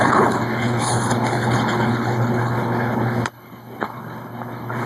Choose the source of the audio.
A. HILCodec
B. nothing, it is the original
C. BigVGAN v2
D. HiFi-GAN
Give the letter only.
A